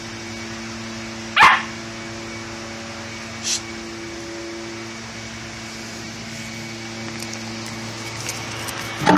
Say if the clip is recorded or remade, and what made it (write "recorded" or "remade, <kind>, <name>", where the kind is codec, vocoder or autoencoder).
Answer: recorded